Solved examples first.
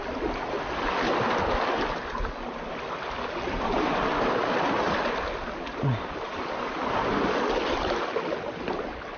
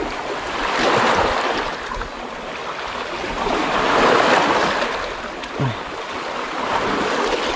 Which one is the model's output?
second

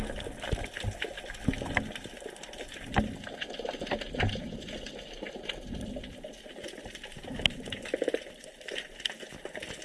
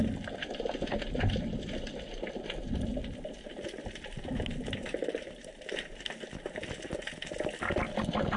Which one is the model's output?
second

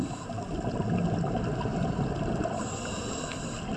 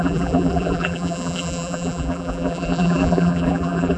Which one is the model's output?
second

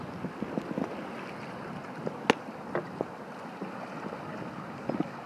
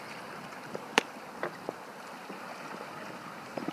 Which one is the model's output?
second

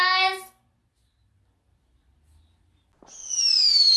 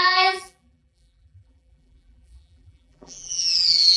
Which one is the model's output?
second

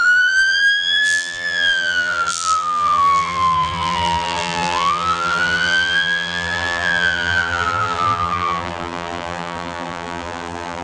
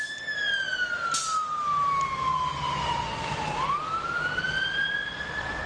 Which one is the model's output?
first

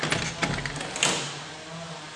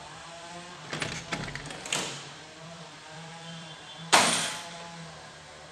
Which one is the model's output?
second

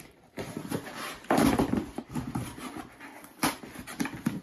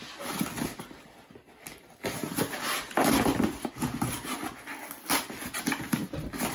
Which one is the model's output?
first